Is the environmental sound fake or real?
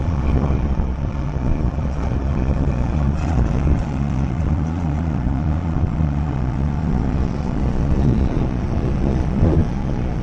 fake